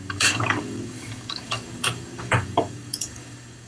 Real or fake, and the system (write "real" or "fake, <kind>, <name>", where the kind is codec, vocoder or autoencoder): fake, codec, DAC